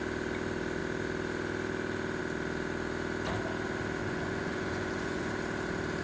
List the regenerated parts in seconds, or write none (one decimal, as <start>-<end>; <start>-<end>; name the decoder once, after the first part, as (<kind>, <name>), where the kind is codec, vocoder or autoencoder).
4.0-5.3 (vocoder, Vocos)